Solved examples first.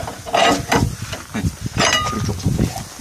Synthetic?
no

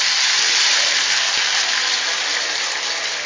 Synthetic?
no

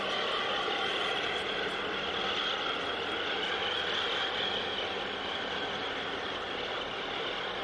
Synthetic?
no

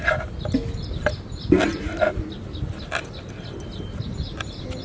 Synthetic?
no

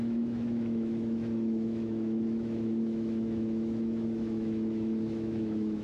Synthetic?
yes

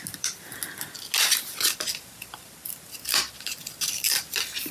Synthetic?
no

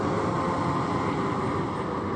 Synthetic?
no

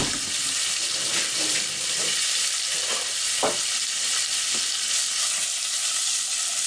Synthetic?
no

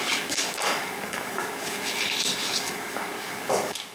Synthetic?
yes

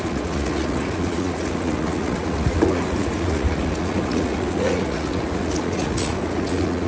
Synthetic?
yes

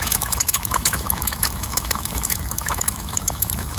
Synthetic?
yes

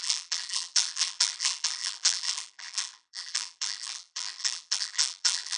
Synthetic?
yes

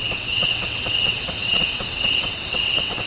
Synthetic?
yes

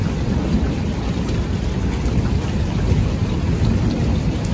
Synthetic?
no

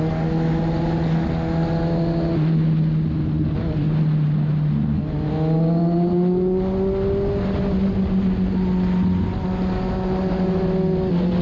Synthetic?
no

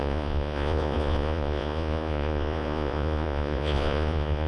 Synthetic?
yes